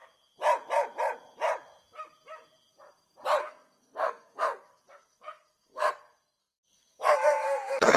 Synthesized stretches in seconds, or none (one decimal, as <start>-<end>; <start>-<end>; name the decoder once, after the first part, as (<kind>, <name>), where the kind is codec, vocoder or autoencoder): 3.4-5.9 (codec, SNAC); 6.4-8.0